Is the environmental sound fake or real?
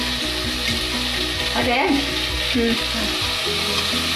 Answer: real